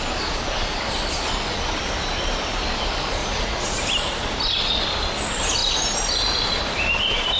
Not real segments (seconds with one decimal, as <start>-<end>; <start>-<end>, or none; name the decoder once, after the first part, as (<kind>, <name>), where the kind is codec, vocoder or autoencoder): 3.2-3.8 (vocoder, Vocos)